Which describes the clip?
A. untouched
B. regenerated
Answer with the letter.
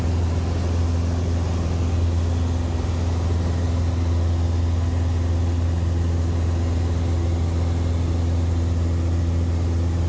A